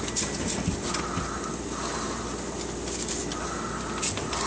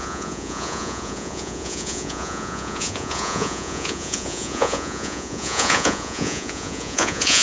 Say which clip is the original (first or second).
first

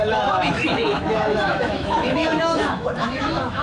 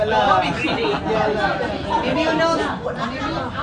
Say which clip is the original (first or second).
second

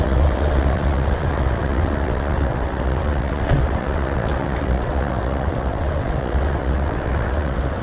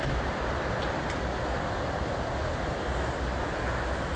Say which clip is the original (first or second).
second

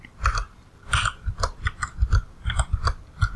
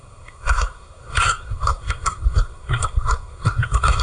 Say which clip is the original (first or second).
first